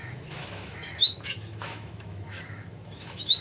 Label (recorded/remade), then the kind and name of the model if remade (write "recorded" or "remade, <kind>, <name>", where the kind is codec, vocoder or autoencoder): remade, autoencoder, DAC-VAE